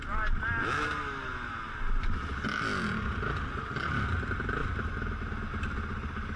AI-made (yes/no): no